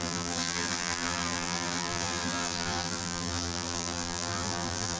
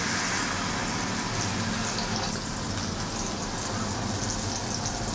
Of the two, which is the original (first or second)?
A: second